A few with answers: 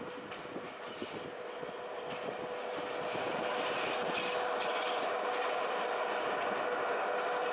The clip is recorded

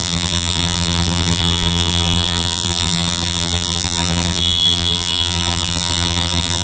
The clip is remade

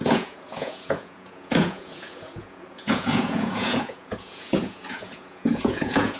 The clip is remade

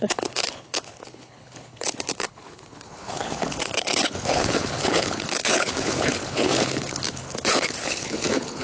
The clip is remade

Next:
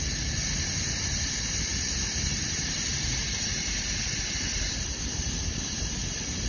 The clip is recorded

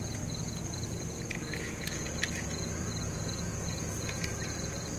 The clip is remade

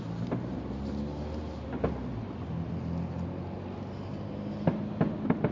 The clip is recorded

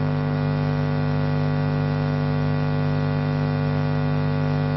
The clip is recorded